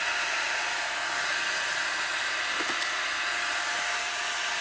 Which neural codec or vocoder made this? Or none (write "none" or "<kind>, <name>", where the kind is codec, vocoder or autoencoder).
none